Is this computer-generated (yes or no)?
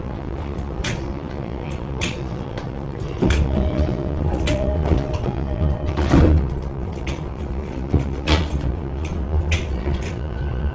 yes